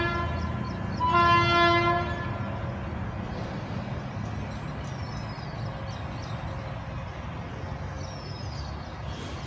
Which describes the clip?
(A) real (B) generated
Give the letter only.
A